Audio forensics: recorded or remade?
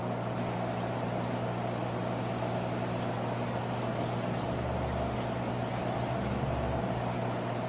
recorded